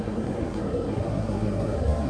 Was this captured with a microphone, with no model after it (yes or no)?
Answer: no